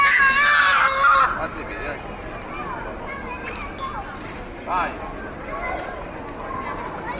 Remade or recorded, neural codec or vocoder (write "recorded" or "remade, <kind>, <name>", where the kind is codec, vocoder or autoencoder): recorded